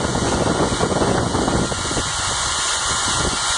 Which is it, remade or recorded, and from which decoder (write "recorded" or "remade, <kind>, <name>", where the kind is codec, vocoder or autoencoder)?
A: remade, vocoder, Vocos